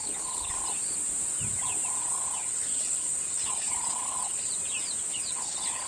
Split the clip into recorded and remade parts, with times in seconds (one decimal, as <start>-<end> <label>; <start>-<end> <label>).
0.0-0.5 remade; 0.5-2.0 recorded; 2.0-4.5 remade; 4.5-5.1 recorded; 5.1-5.9 remade